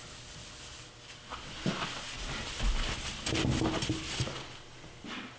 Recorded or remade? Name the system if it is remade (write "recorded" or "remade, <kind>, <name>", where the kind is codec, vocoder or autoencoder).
recorded